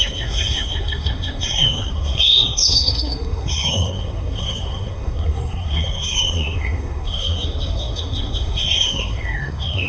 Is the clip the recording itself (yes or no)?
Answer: no